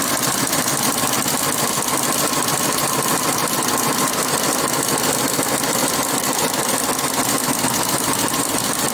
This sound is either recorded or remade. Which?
recorded